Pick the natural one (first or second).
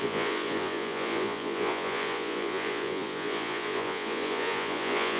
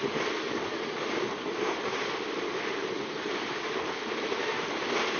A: second